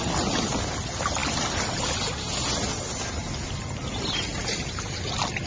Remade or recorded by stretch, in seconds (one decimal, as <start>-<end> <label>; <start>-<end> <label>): 0.0-5.5 recorded